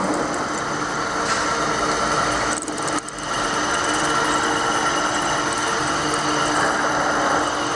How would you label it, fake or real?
real